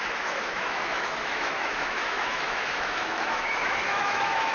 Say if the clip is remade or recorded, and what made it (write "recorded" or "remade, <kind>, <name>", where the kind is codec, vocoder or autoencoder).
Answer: remade, autoencoder, DAC-VAE